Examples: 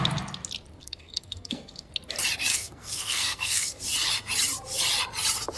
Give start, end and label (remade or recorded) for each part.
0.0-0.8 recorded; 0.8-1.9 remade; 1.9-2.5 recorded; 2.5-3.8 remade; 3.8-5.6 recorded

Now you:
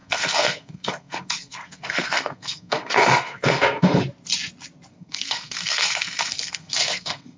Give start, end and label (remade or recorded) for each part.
0.0-4.0 remade; 4.0-4.9 recorded; 4.9-7.4 remade

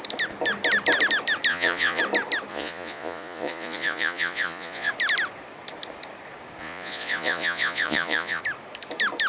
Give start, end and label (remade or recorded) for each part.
0.0-1.5 recorded; 1.5-2.0 remade; 2.0-2.5 recorded; 2.5-4.9 remade; 4.9-6.6 recorded; 6.6-8.4 remade; 8.4-9.3 recorded